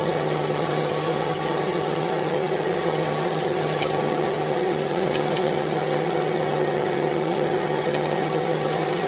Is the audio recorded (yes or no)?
no